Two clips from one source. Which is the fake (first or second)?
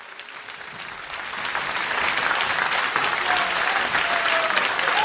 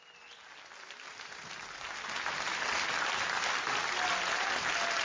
first